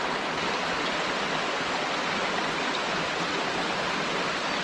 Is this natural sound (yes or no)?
yes